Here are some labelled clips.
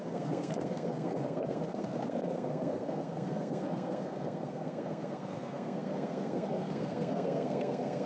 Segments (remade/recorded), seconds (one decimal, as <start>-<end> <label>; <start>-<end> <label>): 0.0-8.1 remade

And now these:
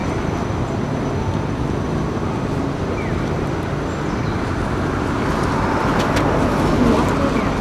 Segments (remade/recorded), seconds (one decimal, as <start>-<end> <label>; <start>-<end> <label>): 0.0-7.6 recorded

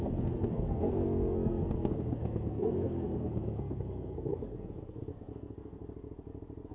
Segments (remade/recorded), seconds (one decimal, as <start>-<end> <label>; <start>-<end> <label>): 0.0-5.8 remade; 5.8-6.7 recorded

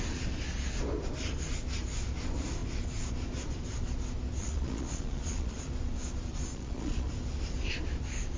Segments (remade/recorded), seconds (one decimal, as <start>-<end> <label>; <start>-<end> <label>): 0.0-4.4 recorded; 4.4-5.7 remade; 5.7-6.5 recorded; 6.5-7.1 remade; 7.1-8.4 recorded

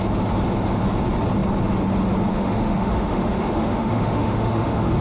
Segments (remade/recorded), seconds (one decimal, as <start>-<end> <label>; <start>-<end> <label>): 0.0-2.3 recorded; 2.3-5.0 remade